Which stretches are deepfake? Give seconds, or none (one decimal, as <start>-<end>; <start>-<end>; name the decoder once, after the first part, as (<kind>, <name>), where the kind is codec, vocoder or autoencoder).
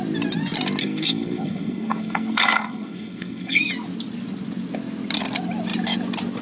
0.8-3.7 (codec, SNAC)